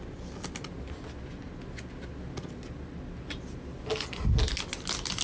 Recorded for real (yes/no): yes